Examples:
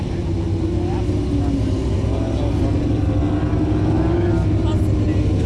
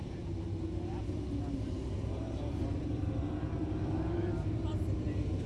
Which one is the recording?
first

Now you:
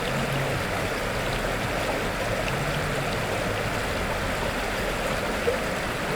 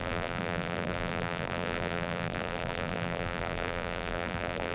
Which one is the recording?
first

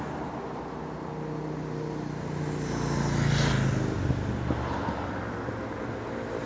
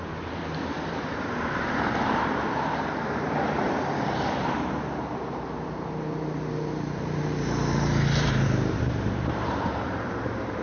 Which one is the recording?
first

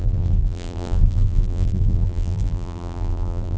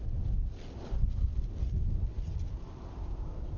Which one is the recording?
second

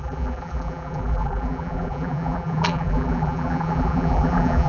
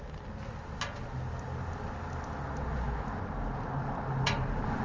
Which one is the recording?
second